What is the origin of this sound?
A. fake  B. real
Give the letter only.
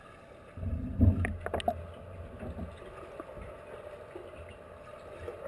B